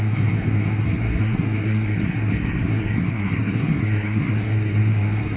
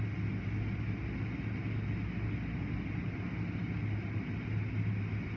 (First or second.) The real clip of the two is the second